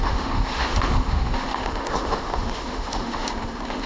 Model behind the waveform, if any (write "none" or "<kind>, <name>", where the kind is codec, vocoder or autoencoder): autoencoder, DAC-VAE